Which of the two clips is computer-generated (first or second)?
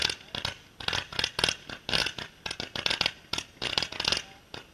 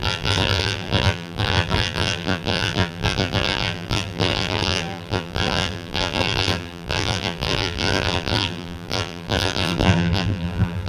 second